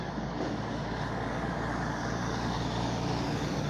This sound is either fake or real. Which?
fake